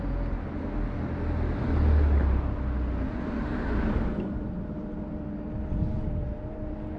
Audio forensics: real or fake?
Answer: real